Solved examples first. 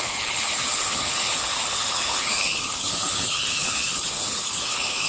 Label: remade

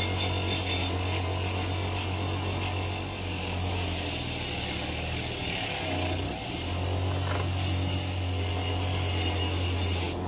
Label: recorded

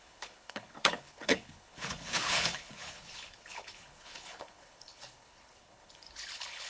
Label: remade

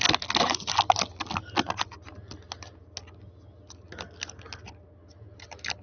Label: recorded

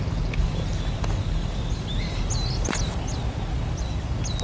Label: recorded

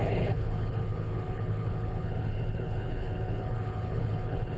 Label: remade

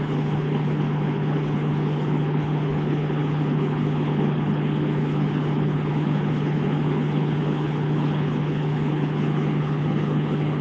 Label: remade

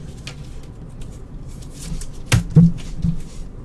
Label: recorded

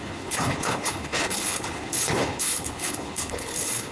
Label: remade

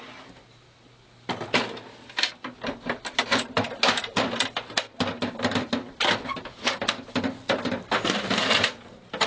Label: recorded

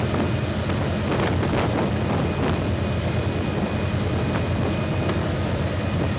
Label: recorded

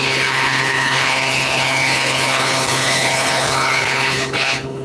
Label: remade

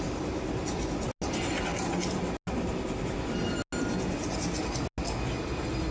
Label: recorded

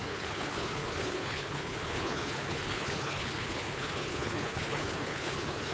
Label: remade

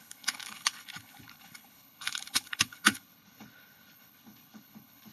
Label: remade